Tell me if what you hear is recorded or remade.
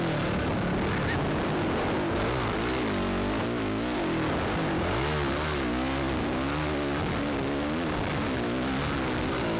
recorded